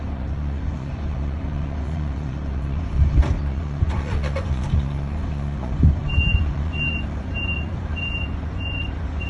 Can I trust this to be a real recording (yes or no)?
no